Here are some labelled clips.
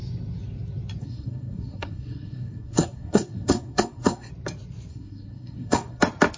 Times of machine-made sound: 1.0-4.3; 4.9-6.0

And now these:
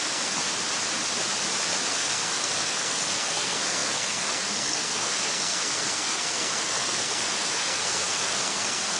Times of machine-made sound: 0.0-0.4; 1.9-9.0

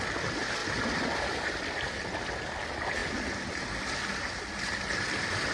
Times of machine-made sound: none

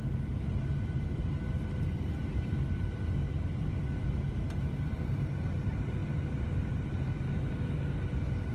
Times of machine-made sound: none

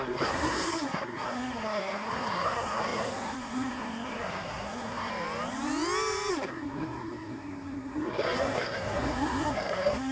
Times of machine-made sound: 0.0-5.1; 6.3-10.1